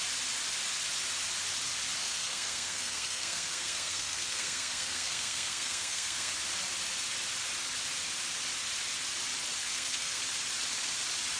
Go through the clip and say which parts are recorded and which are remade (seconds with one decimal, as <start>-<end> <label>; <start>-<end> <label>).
0.0-2.0 recorded; 2.0-6.3 remade; 6.3-9.6 recorded; 9.6-10.2 remade; 10.2-11.4 recorded

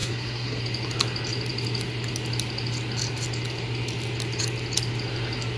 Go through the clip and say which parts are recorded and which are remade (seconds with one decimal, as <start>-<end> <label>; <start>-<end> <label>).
0.0-0.6 remade; 0.6-5.6 recorded

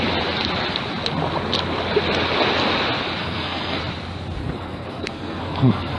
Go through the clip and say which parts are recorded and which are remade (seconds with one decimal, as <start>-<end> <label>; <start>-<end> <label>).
0.0-3.2 recorded; 3.2-3.8 remade; 3.8-4.4 recorded; 4.4-6.0 remade

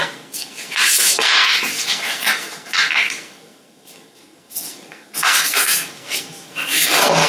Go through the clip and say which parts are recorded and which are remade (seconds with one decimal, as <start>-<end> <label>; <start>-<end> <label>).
0.0-7.3 remade

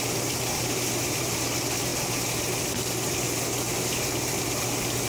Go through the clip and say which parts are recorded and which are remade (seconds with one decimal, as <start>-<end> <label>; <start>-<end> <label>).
0.0-5.1 recorded

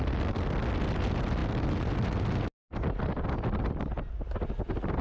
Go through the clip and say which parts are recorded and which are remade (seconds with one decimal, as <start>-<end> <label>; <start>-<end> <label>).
0.0-5.0 recorded

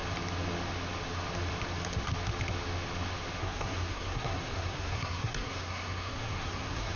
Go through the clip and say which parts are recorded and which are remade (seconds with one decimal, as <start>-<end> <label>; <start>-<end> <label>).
0.0-3.4 recorded; 3.4-7.0 remade

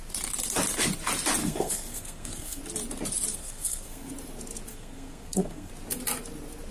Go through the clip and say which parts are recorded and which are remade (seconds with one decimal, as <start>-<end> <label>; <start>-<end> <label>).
0.0-1.4 recorded; 1.4-2.6 remade; 2.6-3.3 recorded; 3.3-4.1 remade; 4.1-4.7 recorded; 4.7-5.7 remade; 5.7-6.7 recorded